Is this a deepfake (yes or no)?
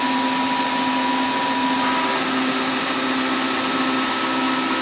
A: no